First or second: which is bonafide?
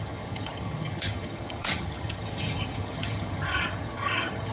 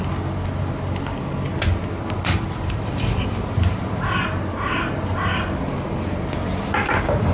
second